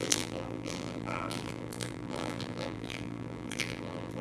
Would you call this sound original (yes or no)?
no